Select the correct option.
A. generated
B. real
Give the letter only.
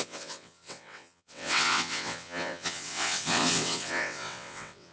A